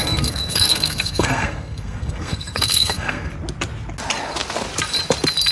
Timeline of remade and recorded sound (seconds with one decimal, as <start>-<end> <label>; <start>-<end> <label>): 0.0-3.3 remade; 3.3-5.5 recorded